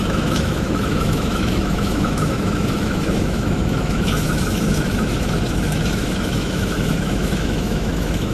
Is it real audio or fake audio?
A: fake